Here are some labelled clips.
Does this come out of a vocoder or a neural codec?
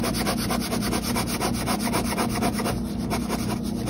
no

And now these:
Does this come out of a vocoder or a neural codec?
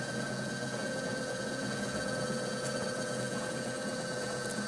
yes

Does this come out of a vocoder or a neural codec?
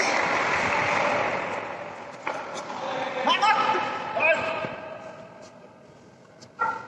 no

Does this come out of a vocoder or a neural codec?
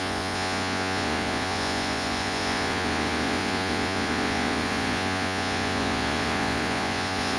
yes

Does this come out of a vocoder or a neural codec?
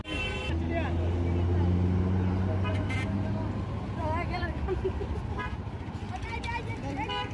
no